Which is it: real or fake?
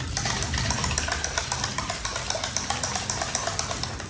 real